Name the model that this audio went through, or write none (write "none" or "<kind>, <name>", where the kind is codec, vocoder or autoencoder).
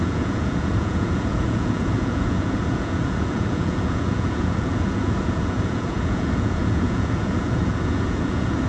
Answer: vocoder, Vocos